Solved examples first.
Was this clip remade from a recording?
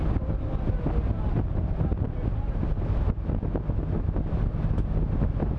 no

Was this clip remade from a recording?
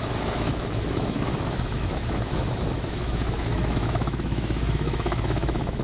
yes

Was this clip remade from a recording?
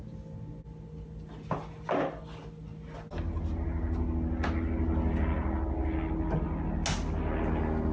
no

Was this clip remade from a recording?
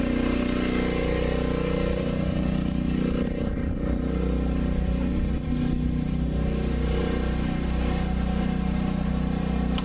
no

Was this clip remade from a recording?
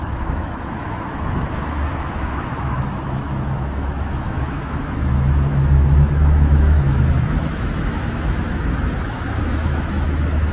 yes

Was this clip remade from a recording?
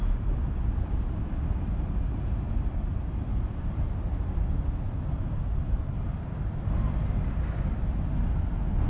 no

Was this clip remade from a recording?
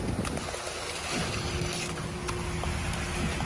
no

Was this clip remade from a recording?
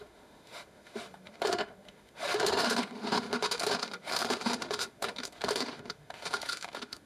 yes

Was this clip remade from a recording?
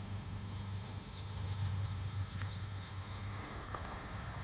yes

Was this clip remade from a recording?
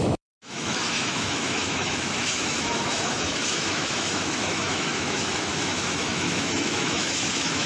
yes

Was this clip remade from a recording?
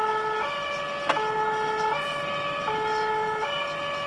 no